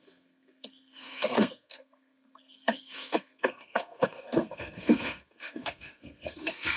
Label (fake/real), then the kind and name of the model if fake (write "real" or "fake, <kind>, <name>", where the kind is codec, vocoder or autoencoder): fake, codec, SNAC